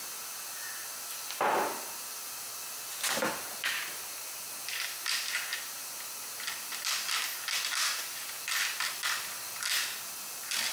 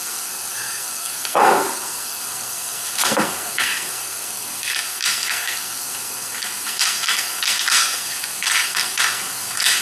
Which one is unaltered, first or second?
first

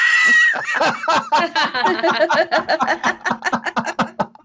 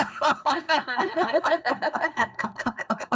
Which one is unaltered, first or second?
first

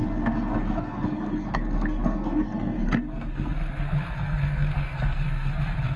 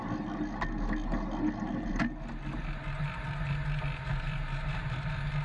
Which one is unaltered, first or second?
second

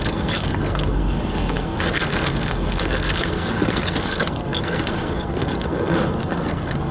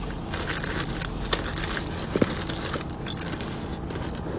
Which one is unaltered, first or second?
second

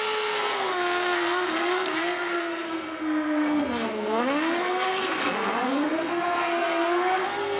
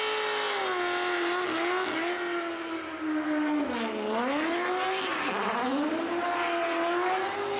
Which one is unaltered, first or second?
second